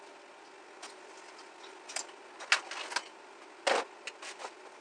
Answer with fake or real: real